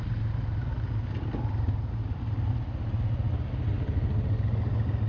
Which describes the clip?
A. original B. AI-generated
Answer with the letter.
A